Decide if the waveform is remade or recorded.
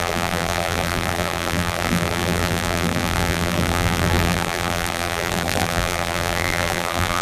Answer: remade